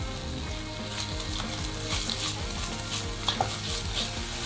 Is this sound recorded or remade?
recorded